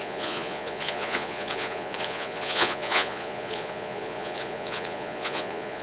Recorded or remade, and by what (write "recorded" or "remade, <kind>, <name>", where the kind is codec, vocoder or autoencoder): remade, vocoder, Vocos